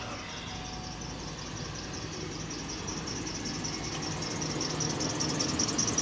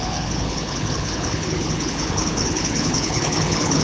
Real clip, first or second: first